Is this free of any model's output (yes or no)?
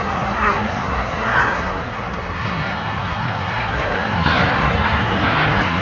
no